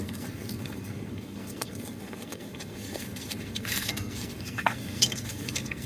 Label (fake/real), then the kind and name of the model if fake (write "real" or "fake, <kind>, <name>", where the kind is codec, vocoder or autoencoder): fake, codec, SNAC